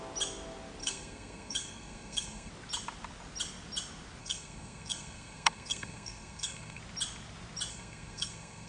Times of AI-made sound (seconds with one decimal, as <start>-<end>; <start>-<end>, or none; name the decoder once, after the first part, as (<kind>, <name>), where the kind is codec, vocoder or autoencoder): 0.8-2.5 (codec, SNAC); 4.2-6.8; 7.7-8.7